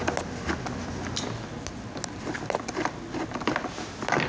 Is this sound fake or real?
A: real